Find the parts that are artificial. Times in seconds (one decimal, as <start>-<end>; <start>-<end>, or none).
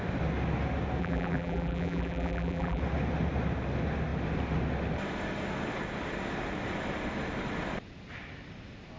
1.0-2.8